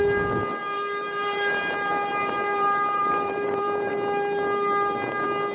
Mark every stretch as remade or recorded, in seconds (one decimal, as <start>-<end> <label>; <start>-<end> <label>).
0.0-0.6 recorded; 0.6-3.9 remade; 3.9-5.5 recorded